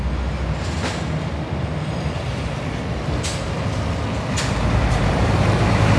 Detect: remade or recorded recorded